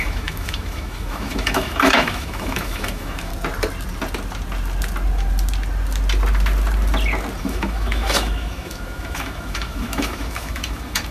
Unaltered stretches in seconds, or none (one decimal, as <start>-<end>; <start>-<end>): 3.3-7.4